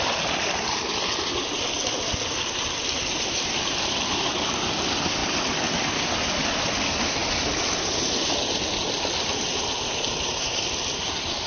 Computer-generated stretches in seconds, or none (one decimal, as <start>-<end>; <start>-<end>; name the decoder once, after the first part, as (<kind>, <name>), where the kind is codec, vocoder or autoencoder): none